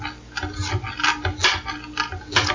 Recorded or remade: recorded